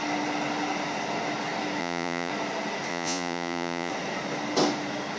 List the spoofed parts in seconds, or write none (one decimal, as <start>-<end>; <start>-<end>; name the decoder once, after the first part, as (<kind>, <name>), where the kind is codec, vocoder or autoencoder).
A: 1.8-2.3 (vocoder, Vocos); 2.9-3.9